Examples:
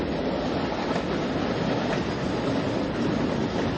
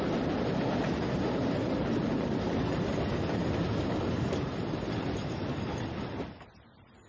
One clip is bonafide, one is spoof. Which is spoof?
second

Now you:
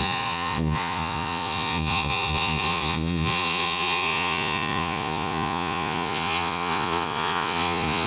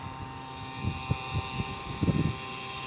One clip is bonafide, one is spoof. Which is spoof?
first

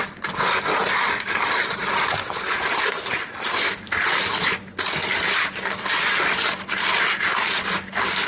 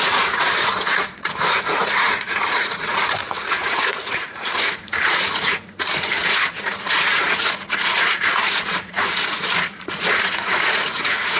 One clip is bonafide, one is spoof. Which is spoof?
second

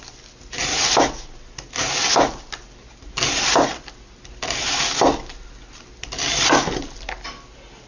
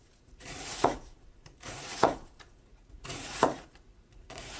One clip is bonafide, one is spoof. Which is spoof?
second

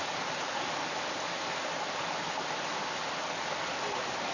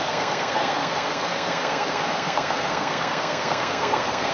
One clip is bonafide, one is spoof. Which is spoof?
second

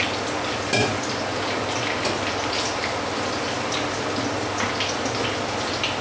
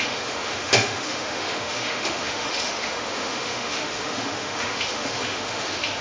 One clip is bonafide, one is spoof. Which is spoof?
second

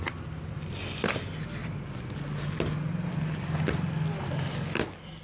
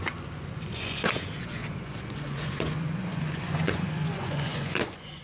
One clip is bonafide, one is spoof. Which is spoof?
second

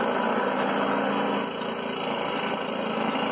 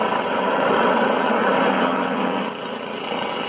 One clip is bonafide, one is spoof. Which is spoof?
second